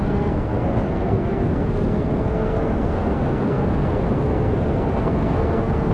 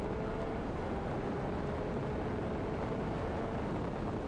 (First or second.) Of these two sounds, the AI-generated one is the first